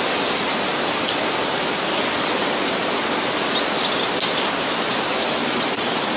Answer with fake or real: real